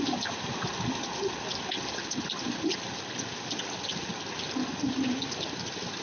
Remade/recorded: recorded